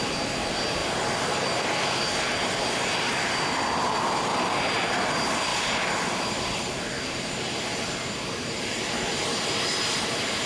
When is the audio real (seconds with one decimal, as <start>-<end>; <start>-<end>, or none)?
0.0-0.8; 2.8-5.5; 6.7-10.5

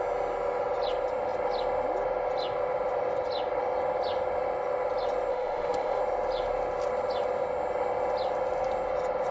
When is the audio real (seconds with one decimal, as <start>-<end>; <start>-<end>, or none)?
0.0-5.3; 6.0-9.3

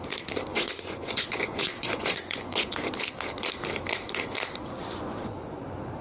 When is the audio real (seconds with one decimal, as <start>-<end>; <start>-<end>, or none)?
0.0-0.5; 2.9-4.8; 5.6-6.0

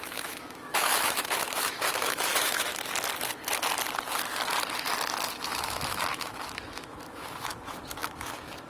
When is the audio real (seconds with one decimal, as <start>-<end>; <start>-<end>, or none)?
2.7-5.3

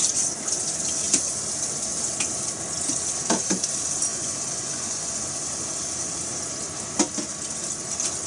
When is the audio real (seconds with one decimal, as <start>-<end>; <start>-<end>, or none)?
0.0-4.1; 5.2-8.3

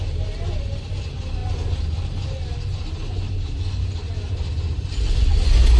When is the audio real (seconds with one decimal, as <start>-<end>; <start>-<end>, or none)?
0.0-5.8

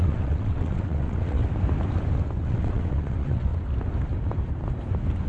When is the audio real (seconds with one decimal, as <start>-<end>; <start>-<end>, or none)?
1.4-2.4; 3.5-5.3